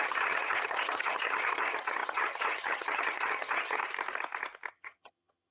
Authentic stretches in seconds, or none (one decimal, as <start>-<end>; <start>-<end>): 3.8-4.7